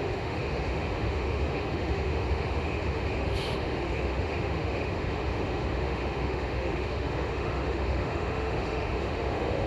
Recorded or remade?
remade